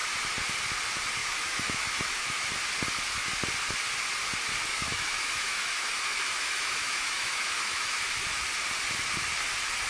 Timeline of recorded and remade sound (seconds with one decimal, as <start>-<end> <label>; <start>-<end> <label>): 0.0-1.2 recorded; 1.2-2.5 remade; 2.5-4.7 recorded; 4.7-8.1 remade; 8.1-9.9 recorded